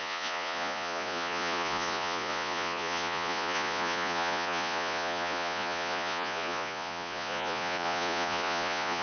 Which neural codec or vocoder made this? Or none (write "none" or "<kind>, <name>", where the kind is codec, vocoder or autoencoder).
vocoder, Vocos